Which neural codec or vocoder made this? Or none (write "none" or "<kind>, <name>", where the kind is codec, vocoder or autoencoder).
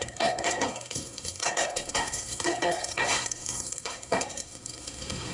codec, SNAC